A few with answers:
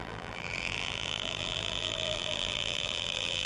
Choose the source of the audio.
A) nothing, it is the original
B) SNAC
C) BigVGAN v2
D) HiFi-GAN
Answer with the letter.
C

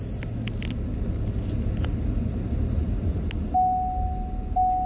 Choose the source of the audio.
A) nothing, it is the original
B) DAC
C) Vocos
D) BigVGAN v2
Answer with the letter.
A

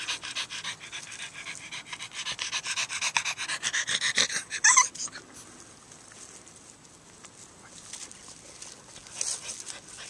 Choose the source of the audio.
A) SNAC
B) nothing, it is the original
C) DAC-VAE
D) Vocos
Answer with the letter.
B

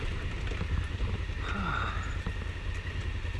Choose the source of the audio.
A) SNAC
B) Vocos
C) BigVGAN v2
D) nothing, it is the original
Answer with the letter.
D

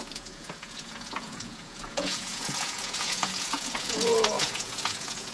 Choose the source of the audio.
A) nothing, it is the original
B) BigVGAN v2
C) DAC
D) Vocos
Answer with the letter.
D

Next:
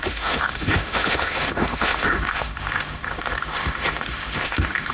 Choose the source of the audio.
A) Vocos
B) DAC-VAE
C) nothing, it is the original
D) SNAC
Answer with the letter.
B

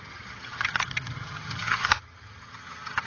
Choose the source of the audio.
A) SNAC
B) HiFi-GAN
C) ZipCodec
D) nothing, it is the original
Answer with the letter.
B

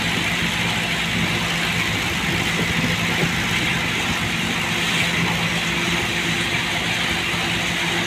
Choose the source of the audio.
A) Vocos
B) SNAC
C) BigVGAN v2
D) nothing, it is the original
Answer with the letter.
D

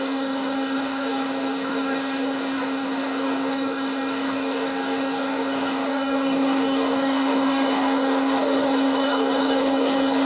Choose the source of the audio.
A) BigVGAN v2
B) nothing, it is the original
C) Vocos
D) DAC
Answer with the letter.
D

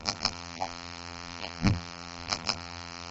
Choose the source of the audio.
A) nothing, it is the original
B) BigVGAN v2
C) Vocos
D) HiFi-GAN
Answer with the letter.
B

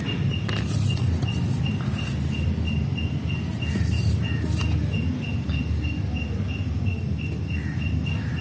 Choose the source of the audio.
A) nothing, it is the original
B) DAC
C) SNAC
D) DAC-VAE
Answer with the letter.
A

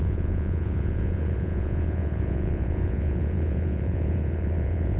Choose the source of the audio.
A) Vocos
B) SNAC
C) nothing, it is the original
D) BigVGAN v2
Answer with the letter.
A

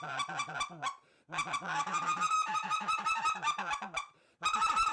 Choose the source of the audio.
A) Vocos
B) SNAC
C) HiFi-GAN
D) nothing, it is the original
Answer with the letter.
D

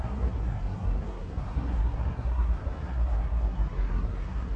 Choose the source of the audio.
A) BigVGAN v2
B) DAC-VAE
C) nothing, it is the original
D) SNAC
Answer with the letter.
D